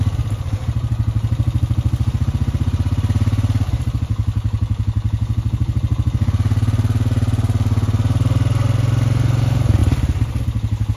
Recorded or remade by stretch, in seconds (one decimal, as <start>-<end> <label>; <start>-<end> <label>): 0.0-11.0 recorded